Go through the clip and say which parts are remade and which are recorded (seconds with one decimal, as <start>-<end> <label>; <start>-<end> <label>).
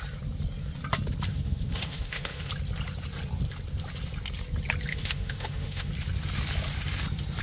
0.0-1.3 recorded; 1.3-2.5 remade; 2.5-4.9 recorded; 4.9-5.9 remade; 5.9-7.4 recorded